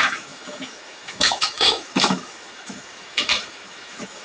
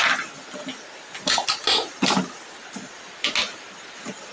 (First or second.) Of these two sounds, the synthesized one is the first